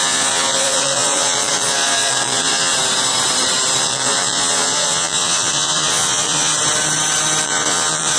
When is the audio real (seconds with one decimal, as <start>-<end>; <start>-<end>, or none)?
2.7-3.8; 6.5-7.4